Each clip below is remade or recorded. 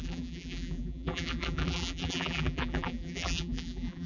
remade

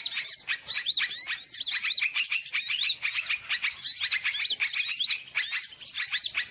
recorded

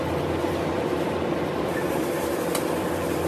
remade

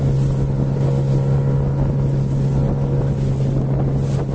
recorded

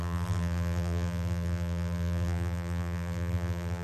remade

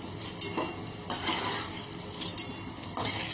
recorded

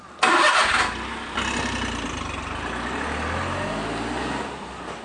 recorded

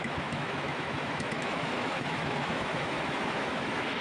remade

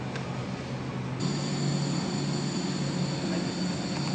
recorded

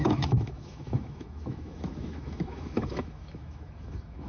remade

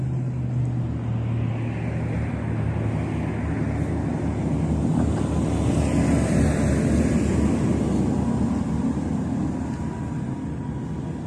recorded